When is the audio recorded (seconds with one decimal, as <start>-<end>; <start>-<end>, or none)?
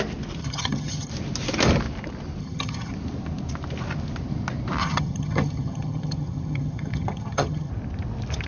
0.0-0.4; 1.1-2.4; 2.9-4.8; 7.7-8.5